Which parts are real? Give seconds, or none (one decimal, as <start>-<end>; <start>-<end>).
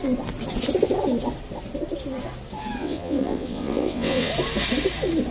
0.0-2.8; 4.3-5.3